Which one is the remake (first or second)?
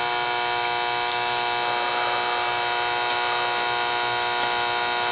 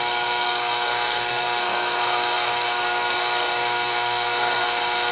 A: second